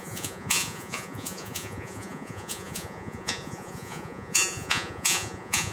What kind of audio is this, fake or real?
fake